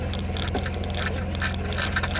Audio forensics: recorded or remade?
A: recorded